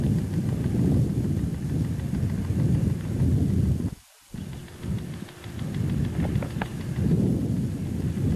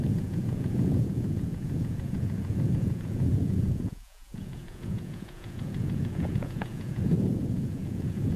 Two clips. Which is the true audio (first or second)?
first